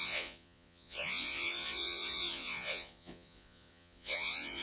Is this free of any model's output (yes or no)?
no